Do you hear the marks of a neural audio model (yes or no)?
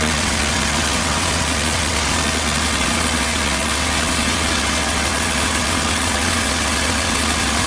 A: yes